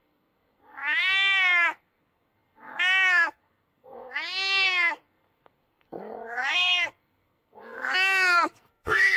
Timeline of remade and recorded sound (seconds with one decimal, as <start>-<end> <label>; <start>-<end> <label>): 0.0-9.2 remade